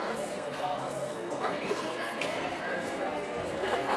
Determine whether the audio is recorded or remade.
remade